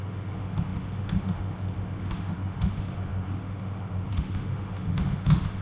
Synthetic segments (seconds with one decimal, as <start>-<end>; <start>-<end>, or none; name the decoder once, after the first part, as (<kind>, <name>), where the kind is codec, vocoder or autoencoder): 0.0-5.6 (autoencoder, DAC-VAE)